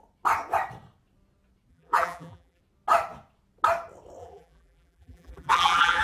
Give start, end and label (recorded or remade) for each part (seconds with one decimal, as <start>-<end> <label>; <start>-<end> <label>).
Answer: 0.0-1.7 recorded; 1.7-2.6 remade; 2.6-4.2 recorded; 4.2-6.0 remade